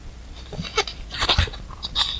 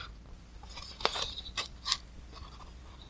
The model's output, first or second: first